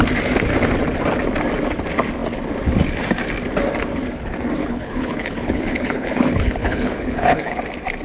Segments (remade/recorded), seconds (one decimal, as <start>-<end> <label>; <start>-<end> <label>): 0.0-4.6 recorded; 4.6-7.6 remade; 7.6-8.0 recorded